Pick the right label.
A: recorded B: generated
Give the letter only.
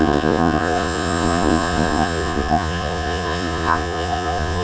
B